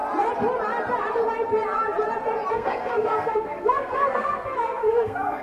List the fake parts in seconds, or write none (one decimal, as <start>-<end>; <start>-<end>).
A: 2.5-5.4